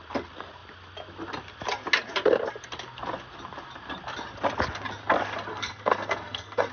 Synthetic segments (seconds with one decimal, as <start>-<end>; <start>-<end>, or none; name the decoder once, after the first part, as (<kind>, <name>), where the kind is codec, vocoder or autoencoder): 5.5-6.7 (codec, SNAC)